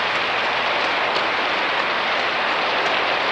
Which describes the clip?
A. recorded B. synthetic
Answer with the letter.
A